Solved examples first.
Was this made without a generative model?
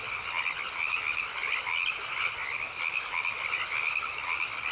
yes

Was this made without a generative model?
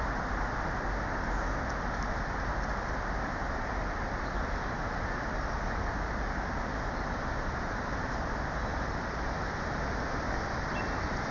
yes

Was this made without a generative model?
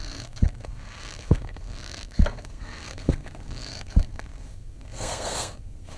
no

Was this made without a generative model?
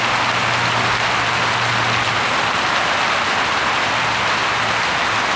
yes